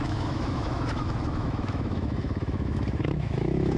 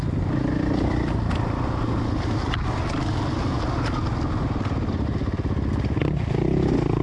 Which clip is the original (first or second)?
second